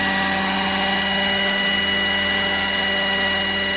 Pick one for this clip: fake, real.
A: real